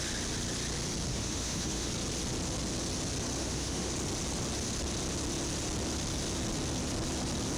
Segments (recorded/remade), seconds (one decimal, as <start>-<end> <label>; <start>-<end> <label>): 0.0-1.1 recorded; 1.1-1.9 remade; 1.9-3.4 recorded; 3.4-3.9 remade; 3.9-7.6 recorded